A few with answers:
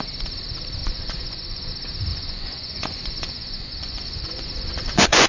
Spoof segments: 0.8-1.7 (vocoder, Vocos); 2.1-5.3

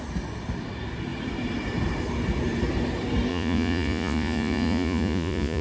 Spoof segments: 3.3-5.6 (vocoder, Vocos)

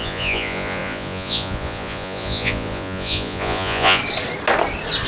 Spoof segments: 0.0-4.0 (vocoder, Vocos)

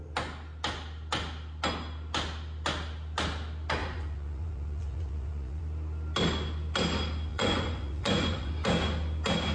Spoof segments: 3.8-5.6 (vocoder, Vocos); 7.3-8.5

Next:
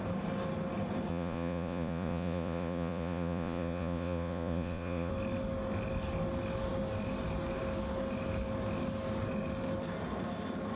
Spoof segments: 1.1-5.1 (vocoder, Vocos)